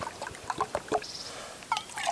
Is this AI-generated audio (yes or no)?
yes